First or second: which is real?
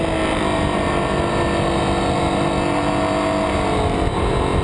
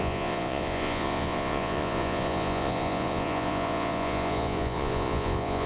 first